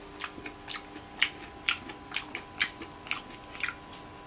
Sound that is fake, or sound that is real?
real